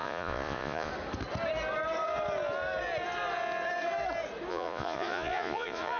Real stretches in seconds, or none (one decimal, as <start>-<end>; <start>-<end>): 0.9-4.5